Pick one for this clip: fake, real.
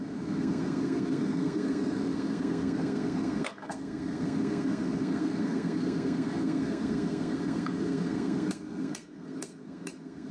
fake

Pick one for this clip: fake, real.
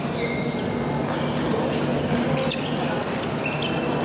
real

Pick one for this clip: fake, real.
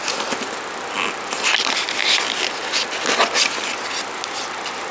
real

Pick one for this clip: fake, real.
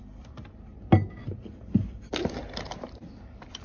real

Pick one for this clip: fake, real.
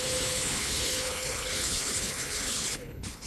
fake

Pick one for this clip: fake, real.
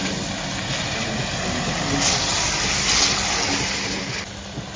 real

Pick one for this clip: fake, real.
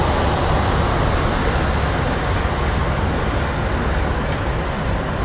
real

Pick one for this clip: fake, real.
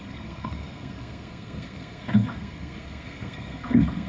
fake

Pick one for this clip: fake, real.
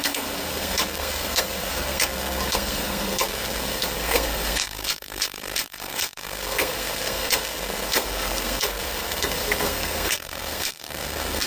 fake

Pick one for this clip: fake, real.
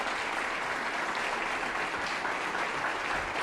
real